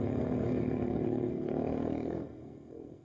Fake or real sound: fake